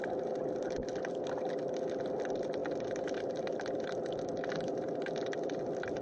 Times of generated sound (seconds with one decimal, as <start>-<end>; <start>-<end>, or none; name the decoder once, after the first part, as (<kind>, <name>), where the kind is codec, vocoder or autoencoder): none